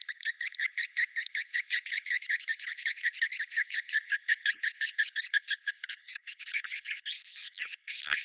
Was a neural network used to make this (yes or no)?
yes